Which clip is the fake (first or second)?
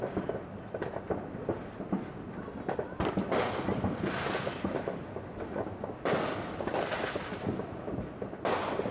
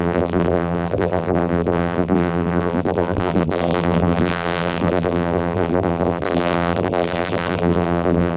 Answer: second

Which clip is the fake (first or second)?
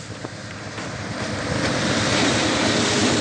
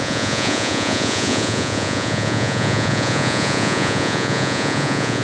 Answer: second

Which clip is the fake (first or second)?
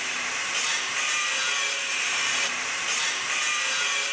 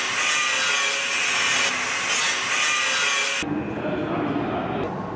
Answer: first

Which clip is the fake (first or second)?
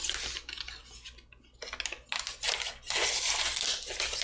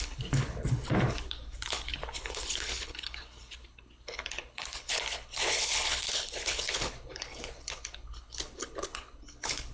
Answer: second